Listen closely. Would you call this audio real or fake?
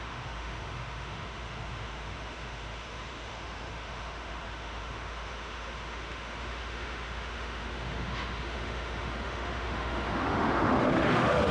fake